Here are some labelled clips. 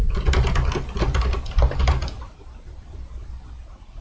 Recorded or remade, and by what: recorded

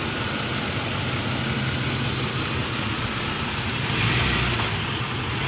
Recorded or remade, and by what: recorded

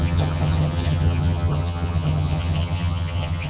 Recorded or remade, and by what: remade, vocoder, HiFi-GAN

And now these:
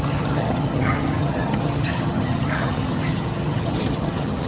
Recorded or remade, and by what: remade, vocoder, HiFi-GAN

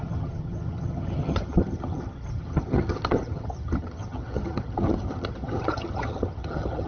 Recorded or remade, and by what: remade, vocoder, HiFi-GAN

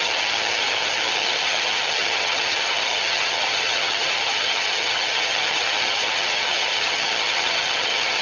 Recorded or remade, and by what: remade, vocoder, HiFi-GAN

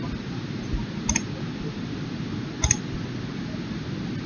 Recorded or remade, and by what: recorded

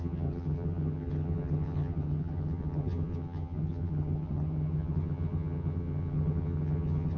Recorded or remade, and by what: remade, vocoder, HiFi-GAN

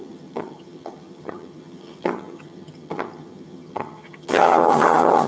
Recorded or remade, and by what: remade, vocoder, HiFi-GAN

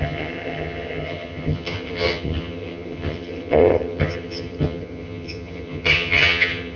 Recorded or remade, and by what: remade, vocoder, HiFi-GAN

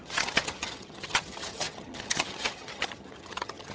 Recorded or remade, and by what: remade, vocoder, HiFi-GAN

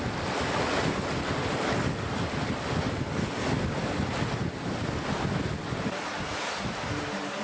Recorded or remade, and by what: recorded